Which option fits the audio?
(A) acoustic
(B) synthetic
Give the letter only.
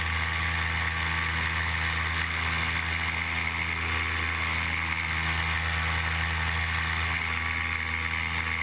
A